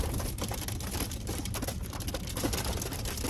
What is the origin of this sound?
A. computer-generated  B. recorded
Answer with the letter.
A